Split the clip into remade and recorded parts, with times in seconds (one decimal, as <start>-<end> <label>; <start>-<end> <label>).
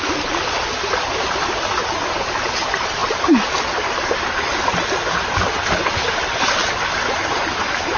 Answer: 0.0-8.0 recorded